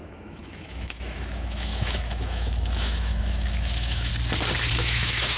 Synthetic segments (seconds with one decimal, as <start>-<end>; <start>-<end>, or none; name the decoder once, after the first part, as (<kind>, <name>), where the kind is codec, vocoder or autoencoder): 0.0-4.1 (autoencoder, DAC-VAE); 4.7-5.4